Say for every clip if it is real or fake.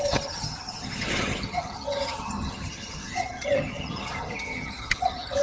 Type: fake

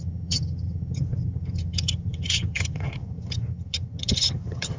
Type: fake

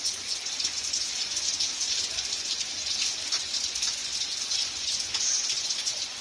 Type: fake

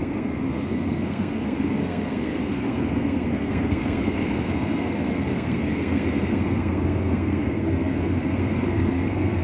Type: fake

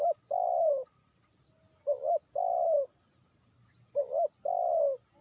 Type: real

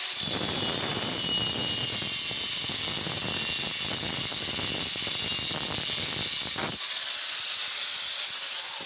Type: real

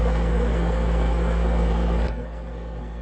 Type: fake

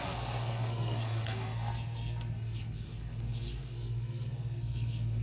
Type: fake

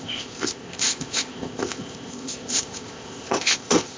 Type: fake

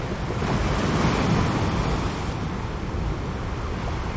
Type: real